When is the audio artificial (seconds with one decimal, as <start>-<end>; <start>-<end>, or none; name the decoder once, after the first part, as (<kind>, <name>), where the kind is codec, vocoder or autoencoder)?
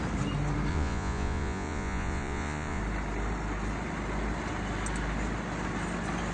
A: 0.7-2.8 (vocoder, Vocos)